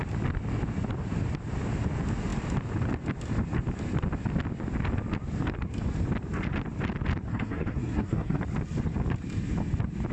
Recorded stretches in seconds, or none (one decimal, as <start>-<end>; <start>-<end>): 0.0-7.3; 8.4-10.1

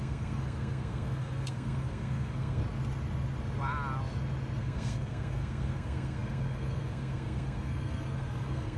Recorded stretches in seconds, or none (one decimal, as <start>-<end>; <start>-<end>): 2.6-4.6

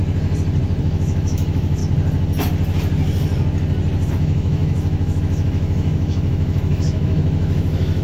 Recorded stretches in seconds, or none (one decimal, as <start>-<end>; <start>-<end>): 0.0-0.8; 1.8-4.1

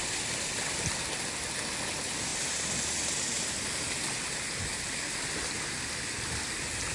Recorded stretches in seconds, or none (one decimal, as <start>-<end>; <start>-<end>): 0.0-6.9